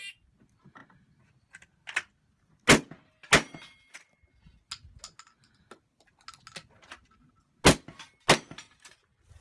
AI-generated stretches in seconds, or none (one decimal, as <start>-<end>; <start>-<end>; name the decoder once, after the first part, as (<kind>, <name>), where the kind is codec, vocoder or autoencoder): none